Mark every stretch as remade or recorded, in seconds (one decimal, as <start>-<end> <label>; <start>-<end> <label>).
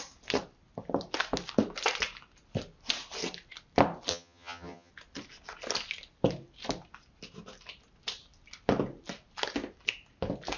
0.0-4.1 recorded; 4.1-4.9 remade; 4.9-10.6 recorded